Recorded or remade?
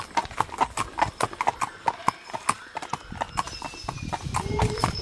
recorded